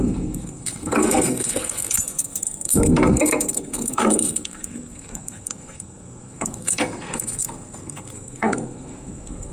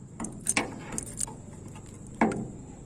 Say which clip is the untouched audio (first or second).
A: second